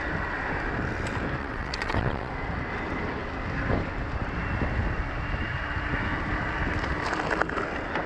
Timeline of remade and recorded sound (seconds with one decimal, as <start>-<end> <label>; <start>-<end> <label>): 0.0-1.4 recorded; 1.4-2.3 remade; 2.3-8.1 recorded